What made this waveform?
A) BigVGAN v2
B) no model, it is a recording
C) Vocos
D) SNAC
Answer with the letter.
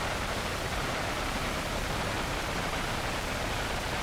A